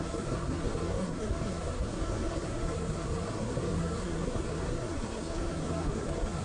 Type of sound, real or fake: fake